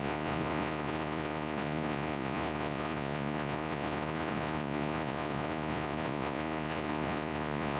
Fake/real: fake